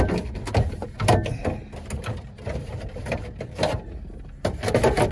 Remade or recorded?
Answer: recorded